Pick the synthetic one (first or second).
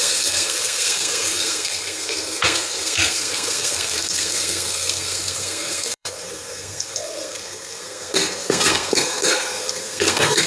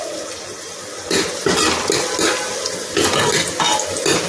first